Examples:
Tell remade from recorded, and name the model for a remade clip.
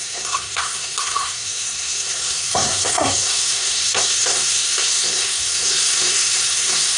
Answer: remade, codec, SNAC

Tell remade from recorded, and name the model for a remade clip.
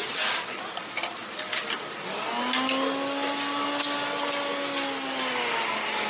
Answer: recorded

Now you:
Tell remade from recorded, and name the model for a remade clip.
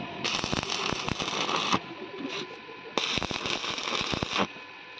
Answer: recorded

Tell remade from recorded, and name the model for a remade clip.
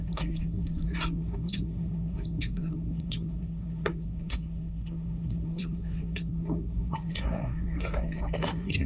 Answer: remade, codec, SNAC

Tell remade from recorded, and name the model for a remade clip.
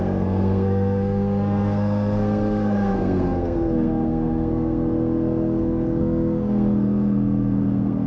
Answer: remade, codec, SNAC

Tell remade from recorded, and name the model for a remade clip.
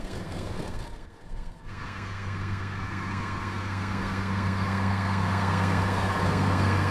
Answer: remade, codec, SNAC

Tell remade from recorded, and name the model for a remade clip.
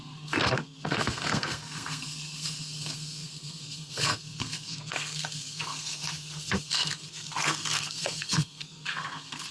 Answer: remade, codec, SNAC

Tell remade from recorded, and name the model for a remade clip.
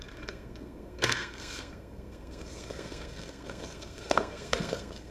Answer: remade, codec, SNAC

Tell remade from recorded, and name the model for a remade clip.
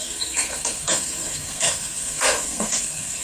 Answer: remade, codec, SNAC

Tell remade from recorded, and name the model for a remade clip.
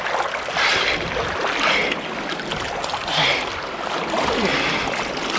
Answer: recorded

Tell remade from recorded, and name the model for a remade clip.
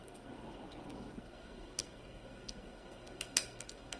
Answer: remade, codec, SNAC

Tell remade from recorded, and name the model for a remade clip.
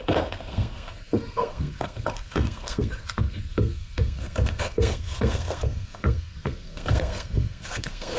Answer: remade, codec, SNAC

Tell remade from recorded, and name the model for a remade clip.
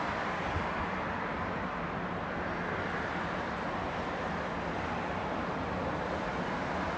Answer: recorded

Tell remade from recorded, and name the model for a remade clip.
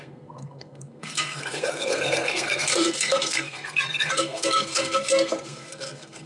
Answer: remade, codec, SNAC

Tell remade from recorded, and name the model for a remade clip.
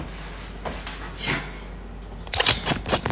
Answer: recorded